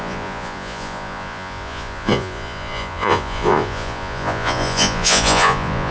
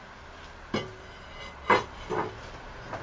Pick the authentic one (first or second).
second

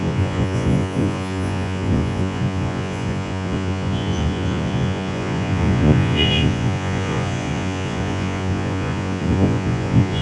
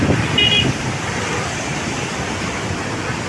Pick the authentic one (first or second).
second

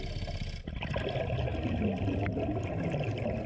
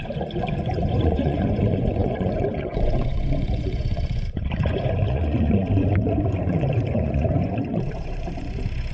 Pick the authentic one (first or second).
first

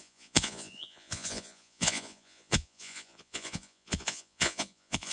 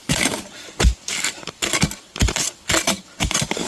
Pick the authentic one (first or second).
second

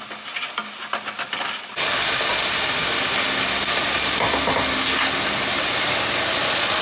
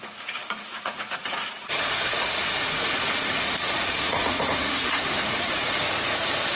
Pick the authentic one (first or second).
first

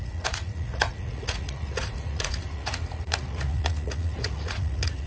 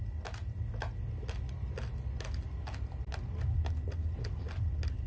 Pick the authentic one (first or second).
second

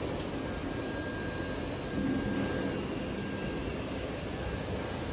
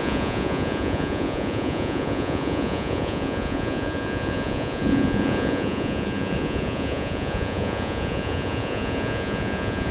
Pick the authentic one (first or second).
first